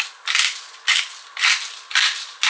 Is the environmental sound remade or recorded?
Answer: recorded